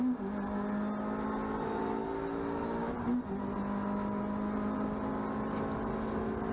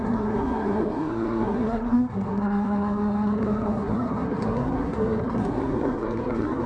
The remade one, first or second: second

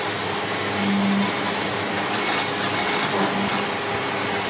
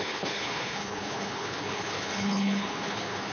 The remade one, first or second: second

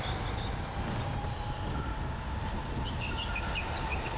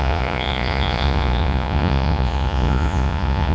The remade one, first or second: second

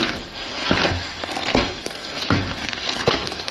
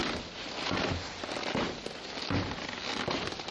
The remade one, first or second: first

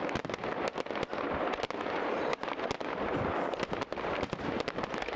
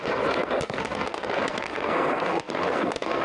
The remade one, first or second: second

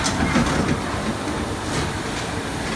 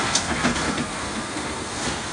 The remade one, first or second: second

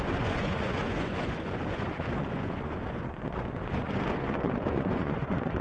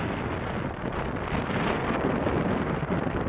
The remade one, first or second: first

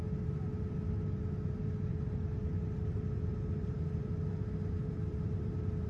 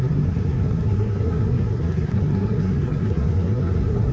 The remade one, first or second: second